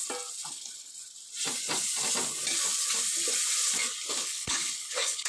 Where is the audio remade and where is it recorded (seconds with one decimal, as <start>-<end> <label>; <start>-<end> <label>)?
0.0-0.5 recorded; 0.5-0.9 remade; 0.9-4.1 recorded; 4.1-5.3 remade